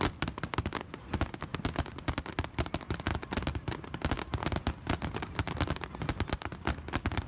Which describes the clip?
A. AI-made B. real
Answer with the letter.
B